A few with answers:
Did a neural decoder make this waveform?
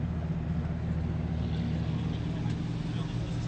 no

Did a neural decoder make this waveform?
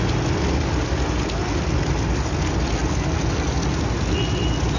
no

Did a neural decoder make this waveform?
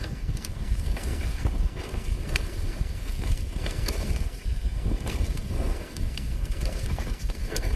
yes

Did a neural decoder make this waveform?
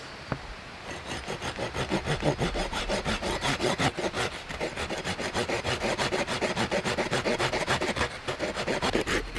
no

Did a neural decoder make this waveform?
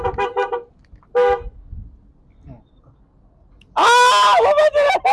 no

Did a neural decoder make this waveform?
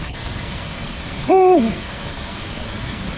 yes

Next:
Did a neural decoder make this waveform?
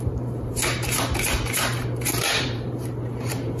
yes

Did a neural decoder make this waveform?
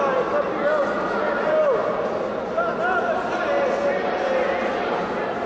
no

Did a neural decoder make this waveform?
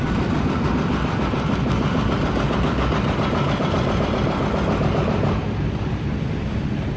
yes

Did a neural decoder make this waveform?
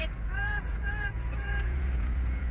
yes